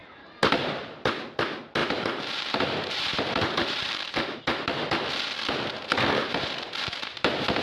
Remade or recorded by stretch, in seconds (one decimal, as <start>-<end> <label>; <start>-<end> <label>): 0.0-1.8 recorded; 1.8-4.4 remade; 4.4-6.2 recorded; 6.2-7.6 remade